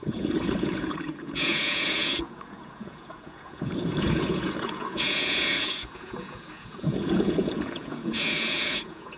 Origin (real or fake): fake